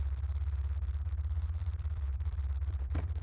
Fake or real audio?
fake